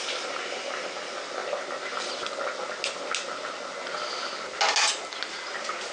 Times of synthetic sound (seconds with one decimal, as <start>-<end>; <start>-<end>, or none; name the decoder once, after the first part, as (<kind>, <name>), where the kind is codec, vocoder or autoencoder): none